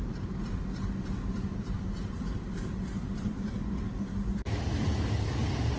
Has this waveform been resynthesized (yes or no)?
no